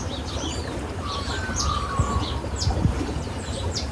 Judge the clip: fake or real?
fake